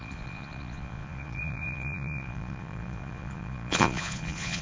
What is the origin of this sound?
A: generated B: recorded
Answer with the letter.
A